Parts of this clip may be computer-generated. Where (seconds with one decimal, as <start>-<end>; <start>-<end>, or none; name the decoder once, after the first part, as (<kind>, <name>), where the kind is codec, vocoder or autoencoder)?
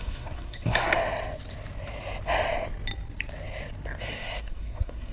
0.0-0.9 (codec, SNAC); 4.0-5.1